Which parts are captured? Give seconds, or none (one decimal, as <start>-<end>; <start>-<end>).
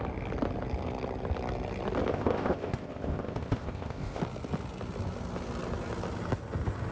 0.0-2.1; 4.2-6.9